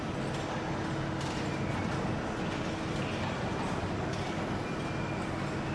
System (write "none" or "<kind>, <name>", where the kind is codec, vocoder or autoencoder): none